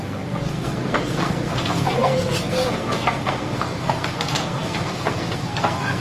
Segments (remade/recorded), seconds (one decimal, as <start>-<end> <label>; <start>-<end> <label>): 0.0-6.0 remade